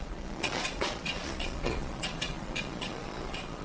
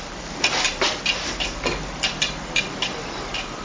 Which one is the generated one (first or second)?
first